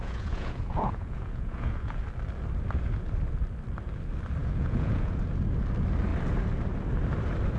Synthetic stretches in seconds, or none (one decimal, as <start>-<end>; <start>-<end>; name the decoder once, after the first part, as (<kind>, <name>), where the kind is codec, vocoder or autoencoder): 0.0-2.0 (vocoder, Vocos); 4.4-5.2